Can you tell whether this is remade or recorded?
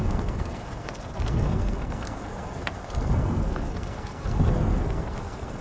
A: remade